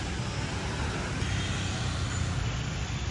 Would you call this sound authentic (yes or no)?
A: yes